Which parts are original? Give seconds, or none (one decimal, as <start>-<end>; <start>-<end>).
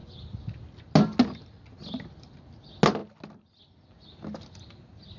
0.0-5.2